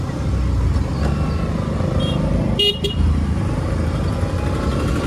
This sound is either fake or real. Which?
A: real